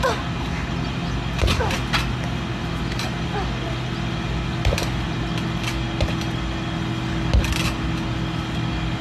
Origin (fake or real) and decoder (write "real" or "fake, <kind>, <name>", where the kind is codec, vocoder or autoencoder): real